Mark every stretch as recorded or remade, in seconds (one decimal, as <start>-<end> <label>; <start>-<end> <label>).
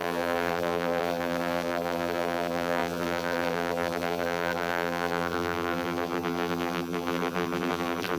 0.0-8.2 remade